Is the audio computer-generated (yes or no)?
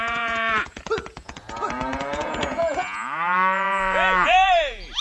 yes